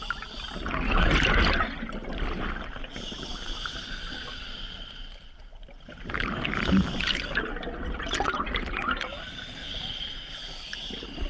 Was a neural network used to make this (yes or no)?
no